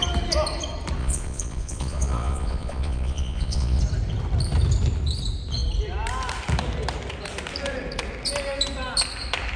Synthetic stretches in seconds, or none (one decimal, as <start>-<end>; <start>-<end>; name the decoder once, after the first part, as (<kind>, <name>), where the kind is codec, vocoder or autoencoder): 1.0-3.8 (vocoder, Vocos)